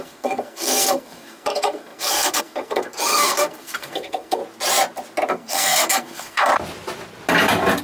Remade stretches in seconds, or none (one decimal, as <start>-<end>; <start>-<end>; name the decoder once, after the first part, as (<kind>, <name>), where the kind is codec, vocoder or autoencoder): 0.0-4.4 (codec, SNAC); 5.3-6.5

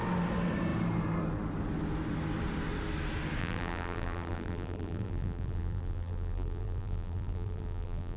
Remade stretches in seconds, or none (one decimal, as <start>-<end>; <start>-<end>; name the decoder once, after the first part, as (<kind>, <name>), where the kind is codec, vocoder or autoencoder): 3.4-8.2 (vocoder, BigVGAN v2)

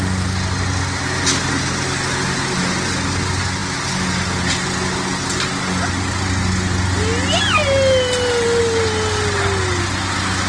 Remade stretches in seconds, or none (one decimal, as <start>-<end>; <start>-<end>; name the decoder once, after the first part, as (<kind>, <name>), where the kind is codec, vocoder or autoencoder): none

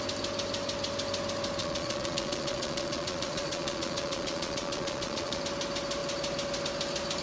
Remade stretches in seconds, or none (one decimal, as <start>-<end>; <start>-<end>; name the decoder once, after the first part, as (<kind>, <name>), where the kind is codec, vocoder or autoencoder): 1.6-5.4 (vocoder, Vocos)

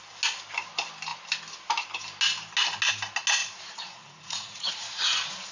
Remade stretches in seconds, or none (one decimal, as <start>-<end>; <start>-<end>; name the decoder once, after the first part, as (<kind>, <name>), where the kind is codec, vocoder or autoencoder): 3.4-5.0 (vocoder, Vocos)